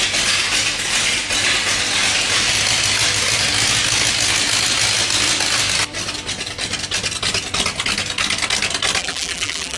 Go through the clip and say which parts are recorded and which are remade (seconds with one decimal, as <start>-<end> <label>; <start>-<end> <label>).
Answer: 0.0-9.0 recorded; 9.0-9.8 remade